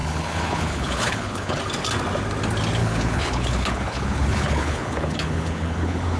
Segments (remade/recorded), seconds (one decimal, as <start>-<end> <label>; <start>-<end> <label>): 0.0-1.6 remade; 1.6-2.8 recorded; 2.8-6.2 remade